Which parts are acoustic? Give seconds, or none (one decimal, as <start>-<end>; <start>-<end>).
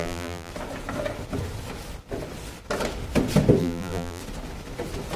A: 0.5-3.6; 4.2-5.2